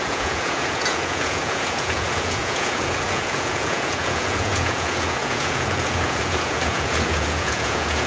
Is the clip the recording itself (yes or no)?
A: no